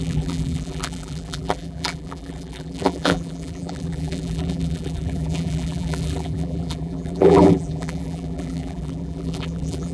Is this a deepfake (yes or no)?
yes